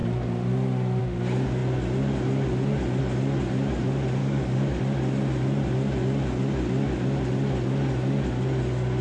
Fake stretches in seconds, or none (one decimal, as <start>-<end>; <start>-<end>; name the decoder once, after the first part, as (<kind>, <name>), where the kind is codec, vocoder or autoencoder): 4.2-4.8 (codec, DAC)